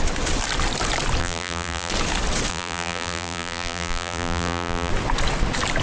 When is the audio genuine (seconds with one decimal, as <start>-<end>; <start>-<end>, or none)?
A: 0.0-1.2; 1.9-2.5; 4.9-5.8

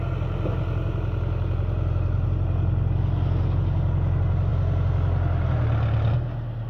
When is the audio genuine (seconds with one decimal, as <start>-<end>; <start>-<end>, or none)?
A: 0.0-6.7

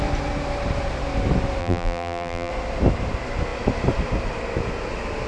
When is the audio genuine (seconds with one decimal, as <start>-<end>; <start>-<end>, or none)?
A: 0.0-1.6; 2.5-5.3

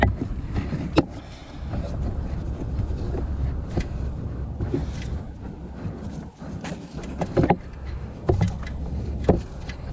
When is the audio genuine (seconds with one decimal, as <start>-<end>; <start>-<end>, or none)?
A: 0.0-9.9

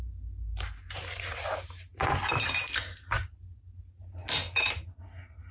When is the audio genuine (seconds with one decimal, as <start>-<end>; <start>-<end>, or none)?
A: 0.0-5.5

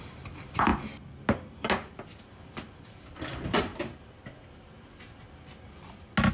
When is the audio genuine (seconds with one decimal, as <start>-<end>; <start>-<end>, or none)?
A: 0.7-2.3; 3.7-6.3

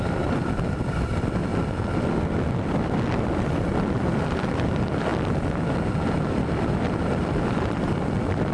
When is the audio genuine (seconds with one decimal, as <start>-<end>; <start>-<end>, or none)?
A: 1.5-3.2; 5.1-6.3

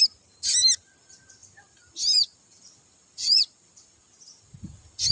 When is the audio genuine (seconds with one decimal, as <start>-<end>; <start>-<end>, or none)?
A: 0.0-1.4; 4.5-5.1